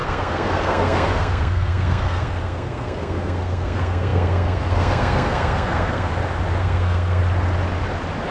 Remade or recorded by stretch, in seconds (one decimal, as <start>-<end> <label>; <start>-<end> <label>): 0.0-6.1 remade; 6.1-6.6 recorded; 6.6-7.2 remade; 7.2-8.3 recorded